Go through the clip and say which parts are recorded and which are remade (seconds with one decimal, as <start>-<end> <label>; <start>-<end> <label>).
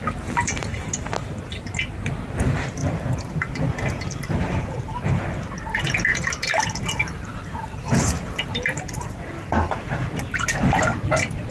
0.0-0.6 recorded; 0.6-1.7 remade; 1.7-2.8 recorded; 2.8-4.3 remade; 4.3-7.3 recorded; 7.3-10.6 remade; 10.6-11.5 recorded